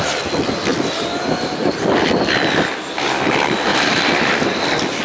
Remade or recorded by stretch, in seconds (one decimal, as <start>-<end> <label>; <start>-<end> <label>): 0.0-0.7 recorded; 0.7-2.3 remade; 2.3-3.7 recorded; 3.7-4.5 remade; 4.5-5.0 recorded